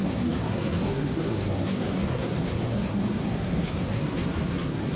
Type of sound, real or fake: fake